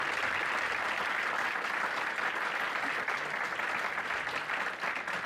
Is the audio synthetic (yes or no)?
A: no